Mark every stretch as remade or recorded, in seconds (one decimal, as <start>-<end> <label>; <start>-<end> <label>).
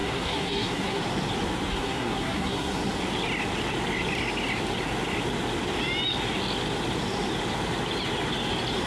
0.0-1.0 remade; 1.0-1.7 recorded; 1.7-2.8 remade; 2.8-8.9 recorded